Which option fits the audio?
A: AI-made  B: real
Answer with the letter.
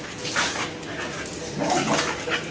B